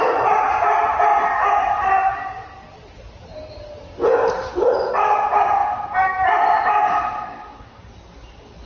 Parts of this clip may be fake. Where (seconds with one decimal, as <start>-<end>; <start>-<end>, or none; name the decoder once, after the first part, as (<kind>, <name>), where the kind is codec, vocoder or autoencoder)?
0.0-1.1 (vocoder, BigVGAN v2); 4.3-5.6